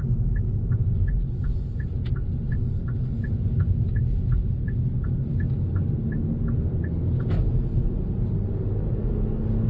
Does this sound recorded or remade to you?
recorded